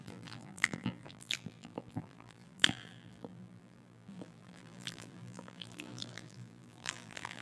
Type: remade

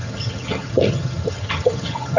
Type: remade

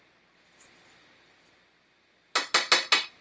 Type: recorded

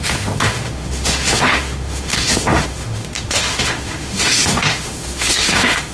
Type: remade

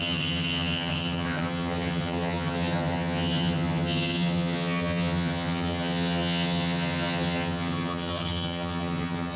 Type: remade